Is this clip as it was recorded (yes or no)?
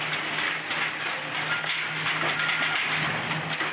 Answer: yes